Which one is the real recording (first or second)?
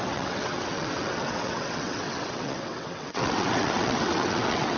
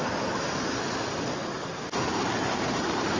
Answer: second